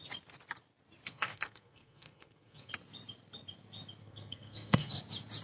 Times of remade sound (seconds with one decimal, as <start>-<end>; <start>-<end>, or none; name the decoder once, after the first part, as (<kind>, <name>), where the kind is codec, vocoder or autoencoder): 1.1-2.7 (codec, SNAC); 4.0-5.0